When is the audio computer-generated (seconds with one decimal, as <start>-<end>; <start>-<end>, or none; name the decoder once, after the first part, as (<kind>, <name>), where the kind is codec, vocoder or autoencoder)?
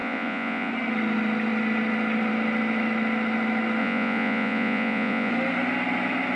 0.0-0.7 (vocoder, Vocos); 3.8-5.3